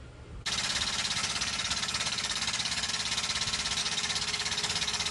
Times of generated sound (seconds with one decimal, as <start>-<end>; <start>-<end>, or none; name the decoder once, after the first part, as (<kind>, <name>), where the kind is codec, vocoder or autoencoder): 1.2-2.9 (codec, DAC); 3.8-5.1